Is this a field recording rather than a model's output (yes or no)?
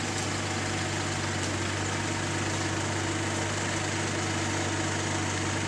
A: yes